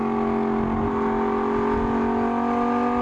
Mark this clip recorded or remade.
recorded